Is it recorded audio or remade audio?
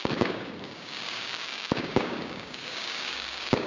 remade